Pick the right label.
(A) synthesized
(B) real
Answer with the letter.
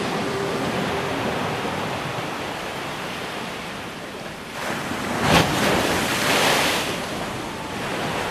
A